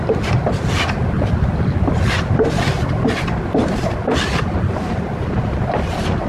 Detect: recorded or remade recorded